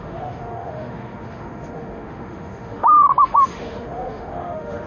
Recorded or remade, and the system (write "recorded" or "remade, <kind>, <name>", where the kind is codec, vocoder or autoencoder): remade, autoencoder, DAC-VAE